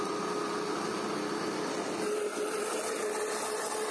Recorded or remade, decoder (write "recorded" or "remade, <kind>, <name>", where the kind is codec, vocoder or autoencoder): recorded